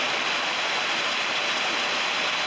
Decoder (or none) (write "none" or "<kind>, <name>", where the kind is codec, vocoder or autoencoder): vocoder, BigVGAN v2